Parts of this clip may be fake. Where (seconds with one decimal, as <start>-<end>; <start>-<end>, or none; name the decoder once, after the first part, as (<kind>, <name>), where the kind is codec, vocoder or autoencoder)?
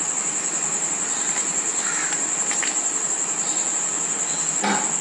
none